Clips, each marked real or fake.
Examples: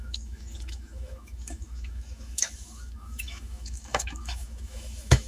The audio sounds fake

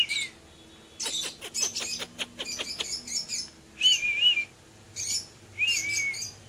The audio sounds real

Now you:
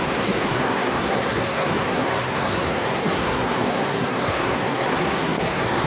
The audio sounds fake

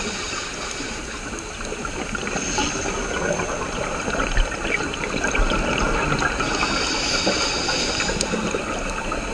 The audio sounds real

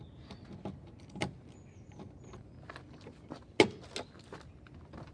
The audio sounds real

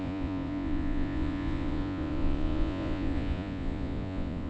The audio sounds fake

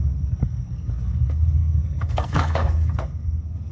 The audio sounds fake